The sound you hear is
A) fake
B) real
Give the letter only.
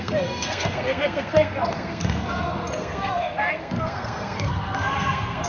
A